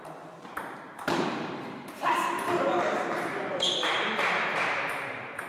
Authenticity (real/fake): fake